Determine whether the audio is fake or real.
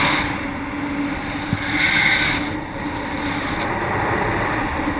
real